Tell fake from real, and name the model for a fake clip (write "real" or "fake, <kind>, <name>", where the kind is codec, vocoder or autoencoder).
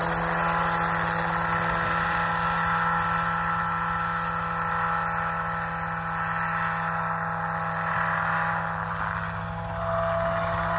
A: real